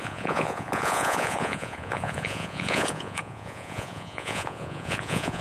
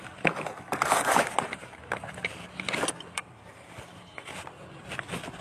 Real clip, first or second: second